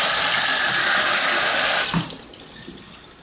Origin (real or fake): real